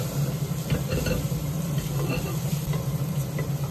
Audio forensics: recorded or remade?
remade